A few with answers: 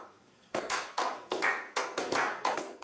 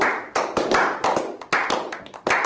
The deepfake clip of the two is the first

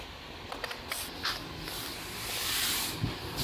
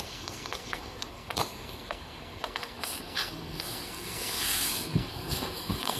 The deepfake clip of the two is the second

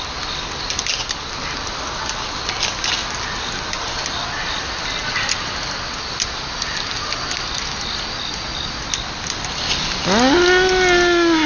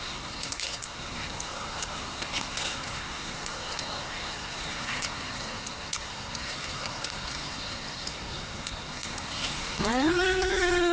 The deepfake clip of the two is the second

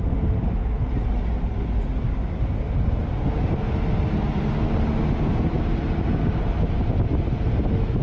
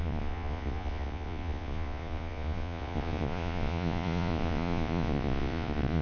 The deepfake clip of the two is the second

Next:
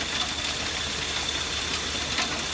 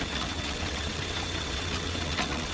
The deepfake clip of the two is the second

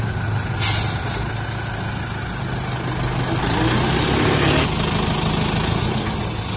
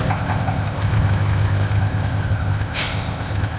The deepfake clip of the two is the second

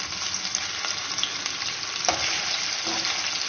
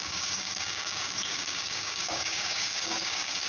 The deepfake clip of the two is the second